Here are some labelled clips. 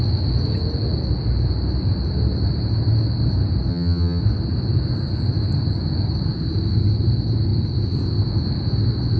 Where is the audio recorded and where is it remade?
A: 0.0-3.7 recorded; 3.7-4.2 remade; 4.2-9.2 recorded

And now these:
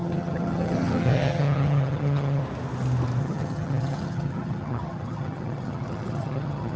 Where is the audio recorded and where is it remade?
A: 0.0-2.4 remade; 2.4-3.2 recorded; 3.2-6.8 remade

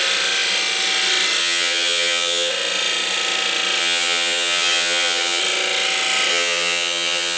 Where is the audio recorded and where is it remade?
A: 0.0-1.4 recorded; 1.4-2.5 remade; 2.5-3.8 recorded; 3.8-5.4 remade; 5.4-6.3 recorded; 6.3-7.4 remade

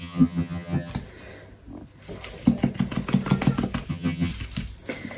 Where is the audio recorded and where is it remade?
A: 0.0-0.9 remade; 0.9-3.9 recorded; 3.9-4.3 remade; 4.3-5.2 recorded

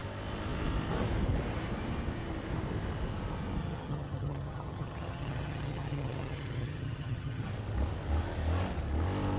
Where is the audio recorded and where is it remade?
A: 0.0-3.6 recorded; 3.6-7.5 remade; 7.5-9.4 recorded